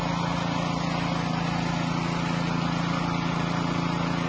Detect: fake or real real